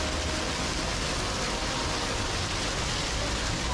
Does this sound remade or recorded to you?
recorded